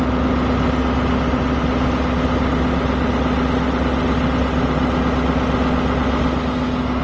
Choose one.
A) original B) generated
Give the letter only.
A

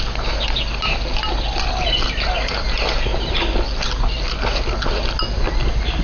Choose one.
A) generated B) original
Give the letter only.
B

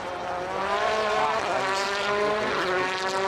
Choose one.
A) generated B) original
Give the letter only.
B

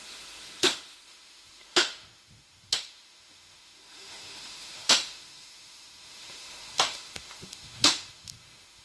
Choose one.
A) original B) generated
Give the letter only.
B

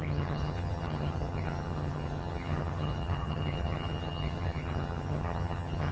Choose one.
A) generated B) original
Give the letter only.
A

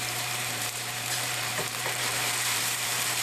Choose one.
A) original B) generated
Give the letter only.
B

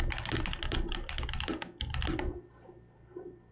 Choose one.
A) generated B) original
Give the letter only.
B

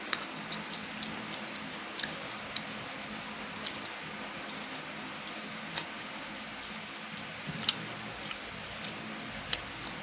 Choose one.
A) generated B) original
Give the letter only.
B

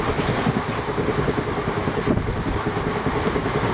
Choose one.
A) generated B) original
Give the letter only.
B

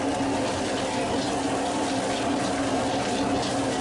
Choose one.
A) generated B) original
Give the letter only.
B